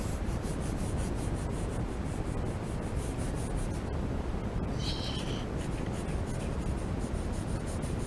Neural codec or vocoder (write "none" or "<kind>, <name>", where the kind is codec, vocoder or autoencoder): none